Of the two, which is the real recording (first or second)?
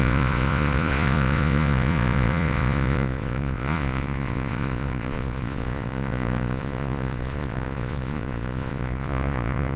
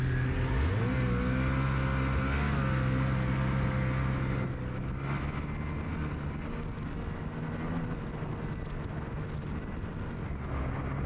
second